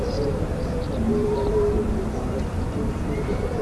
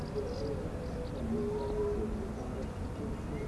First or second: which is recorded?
second